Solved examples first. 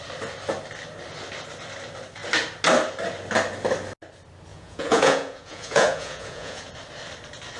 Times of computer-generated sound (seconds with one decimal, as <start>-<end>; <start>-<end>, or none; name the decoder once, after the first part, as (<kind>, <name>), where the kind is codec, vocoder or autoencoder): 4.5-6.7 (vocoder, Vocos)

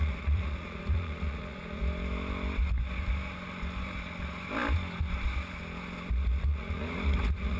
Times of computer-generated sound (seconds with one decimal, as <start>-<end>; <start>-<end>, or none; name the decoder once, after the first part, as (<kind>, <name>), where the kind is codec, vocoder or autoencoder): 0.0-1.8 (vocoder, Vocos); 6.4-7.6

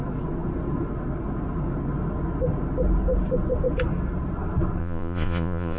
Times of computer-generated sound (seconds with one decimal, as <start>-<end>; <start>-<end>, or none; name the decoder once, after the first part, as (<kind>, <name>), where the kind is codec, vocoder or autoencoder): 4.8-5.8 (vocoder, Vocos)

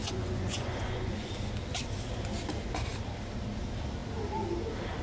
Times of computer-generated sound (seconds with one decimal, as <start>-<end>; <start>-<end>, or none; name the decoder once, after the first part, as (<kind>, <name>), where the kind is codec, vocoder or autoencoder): 0.0-1.3 (vocoder, Vocos)